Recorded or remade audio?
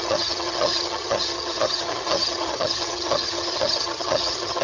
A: remade